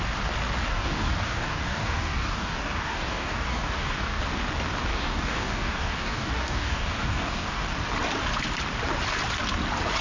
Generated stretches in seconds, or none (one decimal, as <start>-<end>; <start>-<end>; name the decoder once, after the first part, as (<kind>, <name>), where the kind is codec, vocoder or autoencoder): 0.7-4.2 (codec, DAC); 4.9-7.6